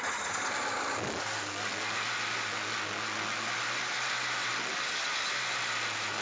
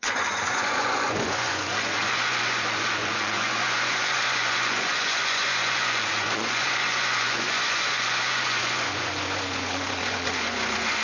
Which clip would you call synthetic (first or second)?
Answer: second